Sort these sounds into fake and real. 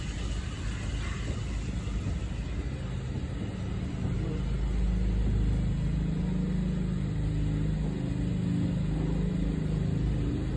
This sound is real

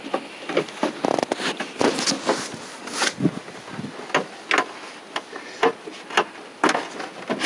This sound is real